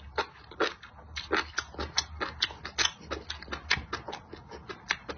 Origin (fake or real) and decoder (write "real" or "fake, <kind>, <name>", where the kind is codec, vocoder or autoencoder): real